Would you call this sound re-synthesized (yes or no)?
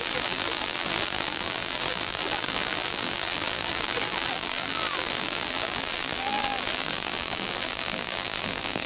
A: yes